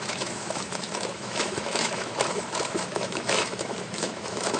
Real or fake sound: fake